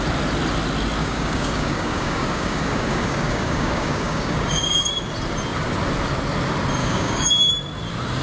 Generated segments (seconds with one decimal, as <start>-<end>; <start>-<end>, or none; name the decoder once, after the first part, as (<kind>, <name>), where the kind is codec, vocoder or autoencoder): 1.0-5.0 (codec, DAC); 6.8-7.5